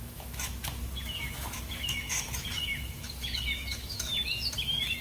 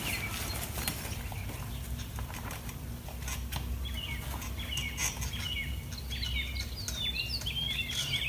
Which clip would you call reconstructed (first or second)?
first